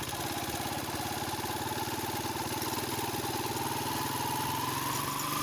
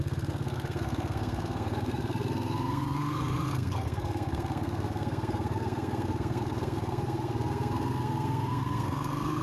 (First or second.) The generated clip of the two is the second